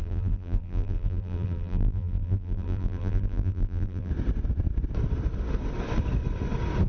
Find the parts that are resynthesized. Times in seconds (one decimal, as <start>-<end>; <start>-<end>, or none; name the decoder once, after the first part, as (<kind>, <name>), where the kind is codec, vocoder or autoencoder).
0.0-4.1 (vocoder, BigVGAN v2)